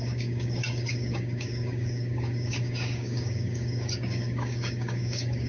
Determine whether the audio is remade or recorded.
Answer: remade